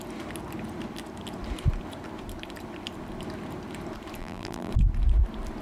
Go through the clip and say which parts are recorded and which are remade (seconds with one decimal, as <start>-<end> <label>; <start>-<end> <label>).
0.0-4.2 recorded; 4.2-4.7 remade; 4.7-5.6 recorded